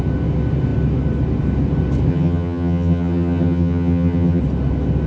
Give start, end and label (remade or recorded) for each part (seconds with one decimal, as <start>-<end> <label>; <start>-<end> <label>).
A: 0.0-2.1 recorded; 2.1-4.4 remade; 4.4-5.1 recorded